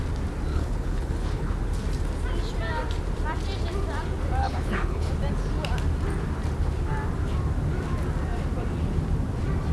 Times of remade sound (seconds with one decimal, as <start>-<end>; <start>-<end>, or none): 0.5-1.5; 4.4-5.1